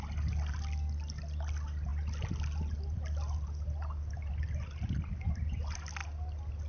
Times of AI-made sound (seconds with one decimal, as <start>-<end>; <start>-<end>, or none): none